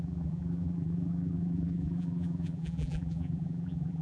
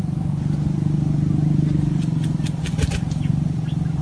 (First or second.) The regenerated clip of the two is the first